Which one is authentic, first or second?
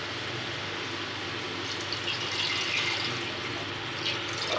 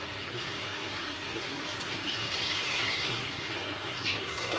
first